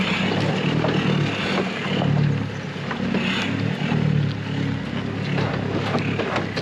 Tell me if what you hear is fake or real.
real